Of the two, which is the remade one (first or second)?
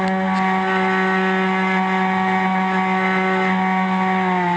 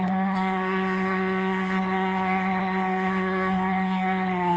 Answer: second